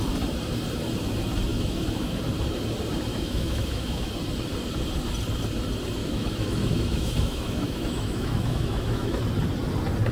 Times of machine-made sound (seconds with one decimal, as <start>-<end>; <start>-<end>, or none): 1.5-2.2; 3.1-4.1; 6.0-9.2